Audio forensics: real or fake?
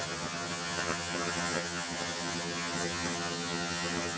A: fake